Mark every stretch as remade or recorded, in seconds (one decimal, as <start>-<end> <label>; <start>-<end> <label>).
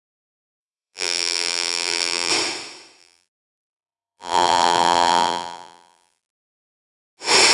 0.0-0.6 recorded; 0.6-2.3 remade; 2.3-3.0 recorded; 3.0-6.2 remade; 6.2-7.5 recorded